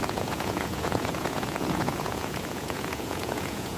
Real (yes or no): no